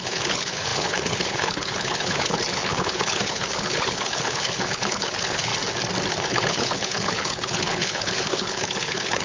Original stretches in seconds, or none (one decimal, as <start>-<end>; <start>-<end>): 5.5-6.1